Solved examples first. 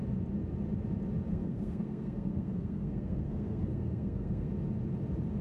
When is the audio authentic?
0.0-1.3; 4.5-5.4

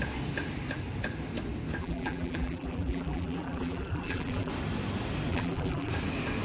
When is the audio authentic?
0.0-1.8; 4.5-5.3; 5.9-6.4

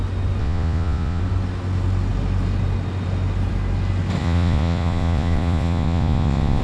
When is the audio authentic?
0.0-0.4; 1.2-4.2

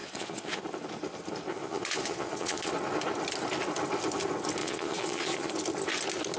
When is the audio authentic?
0.6-1.5; 2.7-4.6; 5.5-6.4